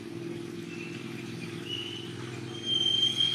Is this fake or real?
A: real